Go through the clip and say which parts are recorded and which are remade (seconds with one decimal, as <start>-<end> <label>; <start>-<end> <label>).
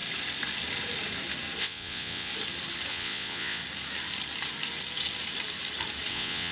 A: 0.0-1.6 recorded; 1.6-2.3 remade; 2.3-2.9 recorded; 2.9-3.6 remade; 3.6-6.1 recorded; 6.1-6.5 remade